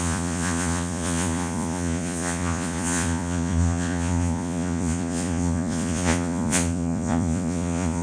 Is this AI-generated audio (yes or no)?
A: yes